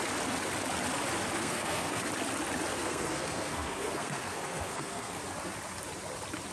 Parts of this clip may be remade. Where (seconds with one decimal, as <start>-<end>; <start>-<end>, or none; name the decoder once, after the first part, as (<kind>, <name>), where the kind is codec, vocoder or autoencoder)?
1.4-2.0 (codec, SNAC); 2.7-5.2